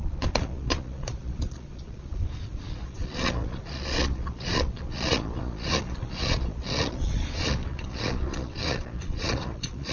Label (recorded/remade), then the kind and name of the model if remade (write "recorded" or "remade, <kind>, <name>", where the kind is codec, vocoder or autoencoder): remade, vocoder, Vocos